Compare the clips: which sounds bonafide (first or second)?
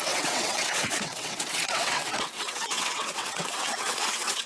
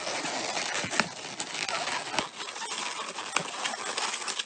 second